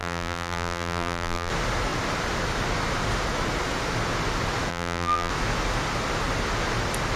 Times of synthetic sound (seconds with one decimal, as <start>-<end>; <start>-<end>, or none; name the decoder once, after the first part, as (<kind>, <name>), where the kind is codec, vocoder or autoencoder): 0.0-1.5 (vocoder, BigVGAN v2); 4.7-5.3